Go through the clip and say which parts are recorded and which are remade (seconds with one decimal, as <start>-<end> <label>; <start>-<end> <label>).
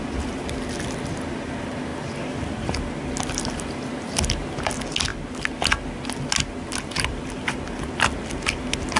0.0-9.0 recorded